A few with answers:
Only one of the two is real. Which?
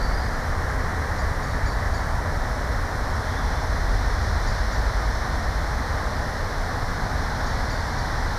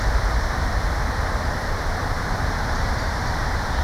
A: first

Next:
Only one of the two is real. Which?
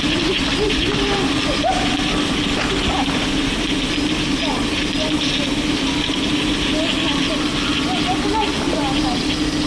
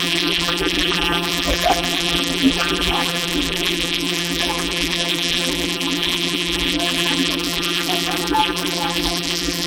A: first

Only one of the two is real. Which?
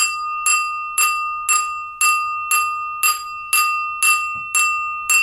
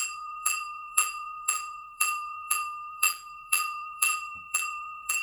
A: first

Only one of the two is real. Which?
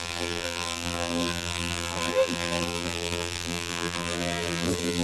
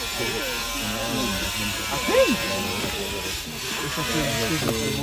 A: second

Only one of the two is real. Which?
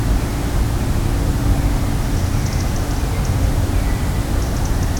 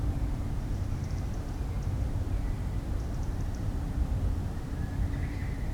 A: first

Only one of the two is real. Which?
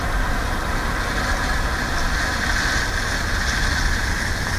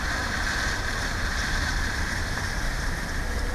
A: first